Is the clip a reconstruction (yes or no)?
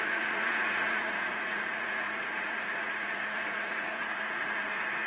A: yes